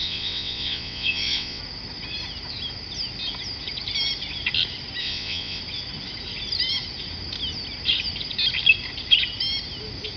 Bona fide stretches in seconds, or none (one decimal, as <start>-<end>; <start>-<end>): 1.6-5.0; 5.6-10.2